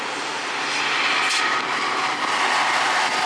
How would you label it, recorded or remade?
recorded